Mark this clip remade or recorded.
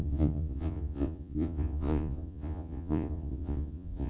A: remade